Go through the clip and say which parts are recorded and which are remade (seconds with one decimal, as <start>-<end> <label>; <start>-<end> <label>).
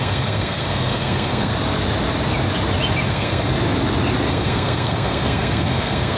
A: 0.0-1.5 remade; 1.5-3.1 recorded; 3.1-3.5 remade; 3.5-4.3 recorded; 4.3-6.2 remade